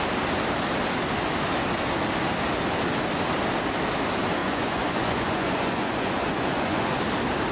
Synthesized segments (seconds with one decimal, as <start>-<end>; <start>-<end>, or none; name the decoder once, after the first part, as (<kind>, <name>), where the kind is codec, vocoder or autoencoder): 4.4-7.0 (vocoder, Vocos)